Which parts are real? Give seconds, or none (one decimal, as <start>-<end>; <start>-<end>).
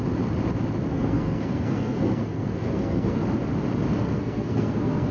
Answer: 0.0-0.9; 3.2-4.0